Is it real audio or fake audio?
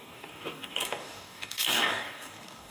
fake